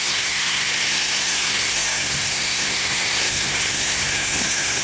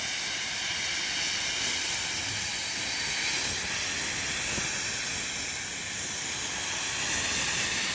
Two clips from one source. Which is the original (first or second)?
second